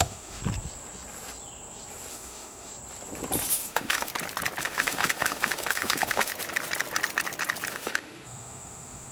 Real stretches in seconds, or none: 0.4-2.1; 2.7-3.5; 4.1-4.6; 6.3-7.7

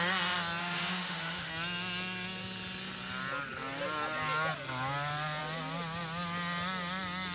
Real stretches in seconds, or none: 0.0-0.6; 1.5-7.3

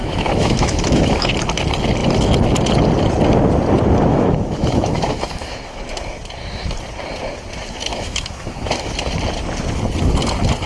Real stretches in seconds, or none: 1.3-4.1; 5.8-7.9; 8.9-10.7

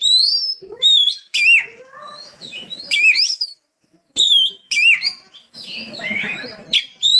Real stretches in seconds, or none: 0.0-0.7; 5.0-5.4; 6.4-7.2

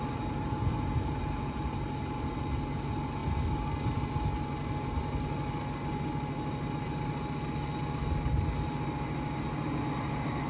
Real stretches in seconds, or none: 0.0-10.5

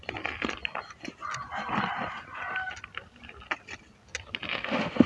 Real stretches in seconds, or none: 0.0-4.5

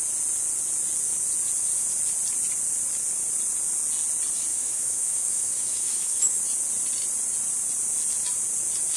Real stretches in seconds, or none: 0.0-4.5; 6.4-9.0

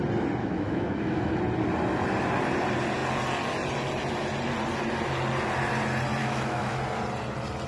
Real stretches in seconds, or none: 0.0-0.4; 1.4-6.2; 6.8-7.7